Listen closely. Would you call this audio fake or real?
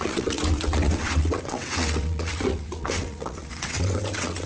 fake